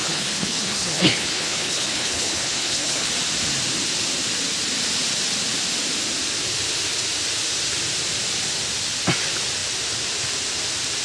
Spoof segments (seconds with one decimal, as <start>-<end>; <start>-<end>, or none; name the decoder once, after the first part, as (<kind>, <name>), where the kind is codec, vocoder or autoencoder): 0.0-3.1 (codec, HILCodec)